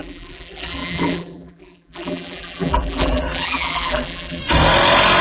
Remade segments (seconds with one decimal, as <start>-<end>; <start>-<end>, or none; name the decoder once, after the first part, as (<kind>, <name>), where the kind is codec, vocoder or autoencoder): 0.0-4.4 (vocoder, BigVGAN v2)